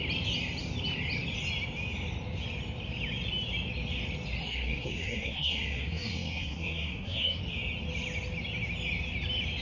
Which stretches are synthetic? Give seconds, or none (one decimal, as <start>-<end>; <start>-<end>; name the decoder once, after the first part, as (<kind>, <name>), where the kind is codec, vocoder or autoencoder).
4.4-7.4 (codec, SNAC)